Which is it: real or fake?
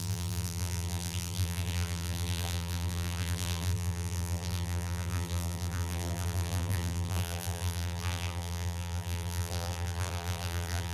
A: fake